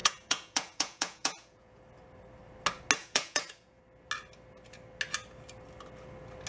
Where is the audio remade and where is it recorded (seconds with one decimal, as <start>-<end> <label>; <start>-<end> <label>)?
0.0-1.8 remade; 1.8-3.0 recorded; 3.0-3.8 remade; 3.8-6.5 recorded